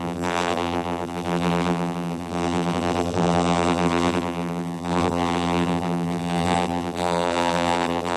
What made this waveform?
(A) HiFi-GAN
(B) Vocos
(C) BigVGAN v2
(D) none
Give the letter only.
C